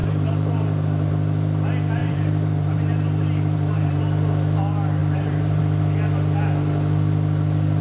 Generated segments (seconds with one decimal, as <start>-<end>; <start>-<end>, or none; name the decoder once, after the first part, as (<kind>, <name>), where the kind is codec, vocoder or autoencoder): 0.0-1.1 (vocoder, BigVGAN v2); 2.0-4.0; 5.0-5.6